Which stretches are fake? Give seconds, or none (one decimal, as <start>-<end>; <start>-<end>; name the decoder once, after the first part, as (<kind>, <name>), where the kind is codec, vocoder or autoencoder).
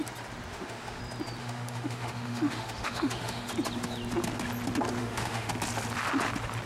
0.5-1.0 (autoencoder, DAC-VAE); 1.4-3.5; 5.0-5.5